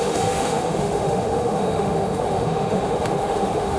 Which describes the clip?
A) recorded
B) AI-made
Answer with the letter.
B